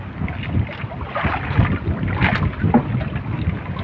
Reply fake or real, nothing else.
real